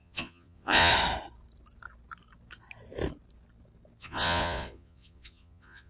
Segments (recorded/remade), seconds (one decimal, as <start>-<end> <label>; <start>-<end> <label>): 0.0-0.9 remade; 0.9-4.0 recorded; 4.0-5.9 remade